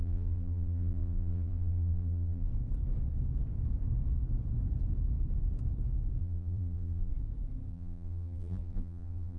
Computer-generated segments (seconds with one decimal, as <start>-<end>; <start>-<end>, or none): 0.0-2.5; 6.2-7.1; 7.7-9.4